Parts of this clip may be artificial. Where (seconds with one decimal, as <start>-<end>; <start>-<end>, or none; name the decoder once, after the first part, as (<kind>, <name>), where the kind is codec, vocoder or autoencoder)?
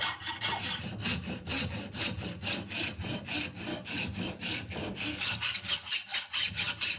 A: 3.7-5.7 (codec, DAC)